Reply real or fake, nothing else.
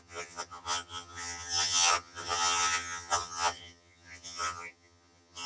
fake